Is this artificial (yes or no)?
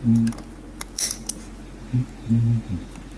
no